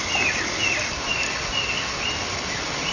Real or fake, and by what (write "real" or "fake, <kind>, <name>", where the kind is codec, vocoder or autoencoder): real